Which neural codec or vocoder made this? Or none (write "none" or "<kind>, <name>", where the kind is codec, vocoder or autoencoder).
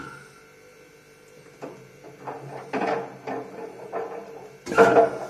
none